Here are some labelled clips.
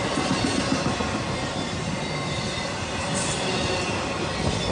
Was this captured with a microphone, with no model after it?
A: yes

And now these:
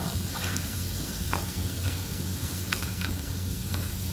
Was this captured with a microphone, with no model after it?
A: no